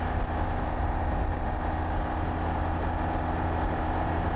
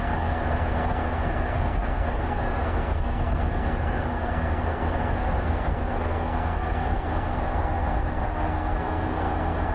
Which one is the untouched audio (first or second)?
first